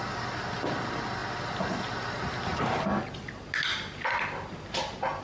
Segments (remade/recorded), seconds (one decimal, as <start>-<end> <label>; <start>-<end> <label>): 0.0-5.2 recorded